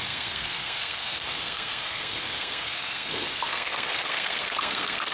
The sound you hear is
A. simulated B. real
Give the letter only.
A